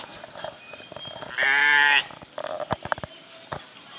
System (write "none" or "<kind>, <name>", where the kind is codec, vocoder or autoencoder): none